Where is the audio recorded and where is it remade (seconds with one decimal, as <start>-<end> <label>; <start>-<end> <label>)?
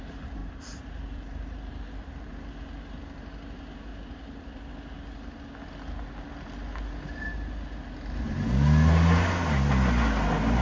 0.0-0.4 recorded; 0.4-2.3 remade; 2.3-3.9 recorded; 3.9-4.7 remade; 4.7-10.6 recorded